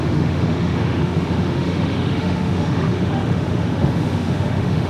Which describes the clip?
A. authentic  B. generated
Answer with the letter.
B